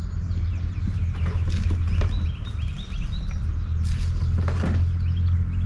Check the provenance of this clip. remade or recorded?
recorded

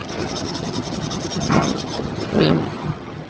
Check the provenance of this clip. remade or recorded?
remade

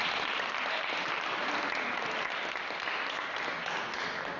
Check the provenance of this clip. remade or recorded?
recorded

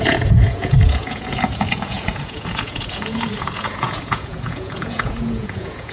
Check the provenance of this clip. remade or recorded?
remade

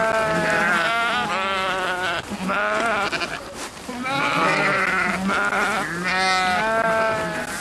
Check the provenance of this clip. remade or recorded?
recorded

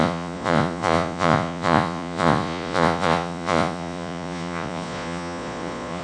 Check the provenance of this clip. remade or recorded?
remade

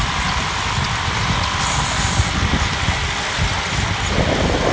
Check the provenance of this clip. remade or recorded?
recorded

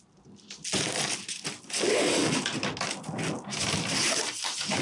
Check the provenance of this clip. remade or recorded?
recorded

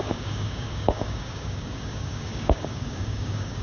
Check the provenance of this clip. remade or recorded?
remade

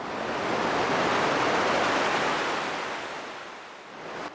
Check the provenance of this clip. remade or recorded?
recorded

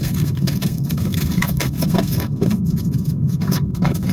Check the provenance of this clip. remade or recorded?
remade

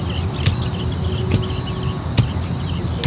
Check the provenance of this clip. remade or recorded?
recorded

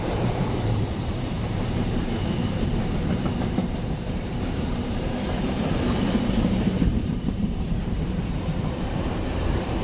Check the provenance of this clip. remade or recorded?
remade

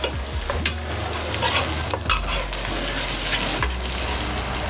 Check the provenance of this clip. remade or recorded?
recorded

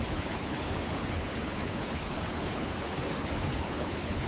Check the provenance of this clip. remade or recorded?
remade